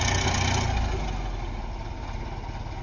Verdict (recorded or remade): recorded